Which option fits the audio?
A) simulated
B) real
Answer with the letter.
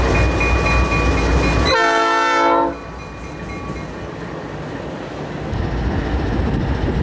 B